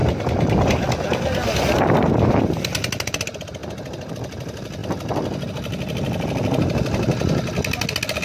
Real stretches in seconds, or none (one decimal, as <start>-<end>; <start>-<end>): 0.0-8.2